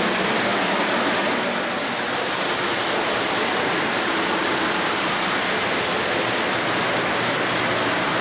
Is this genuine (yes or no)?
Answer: yes